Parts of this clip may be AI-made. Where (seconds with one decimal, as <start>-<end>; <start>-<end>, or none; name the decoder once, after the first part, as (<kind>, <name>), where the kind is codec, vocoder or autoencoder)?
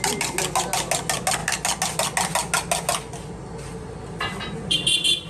none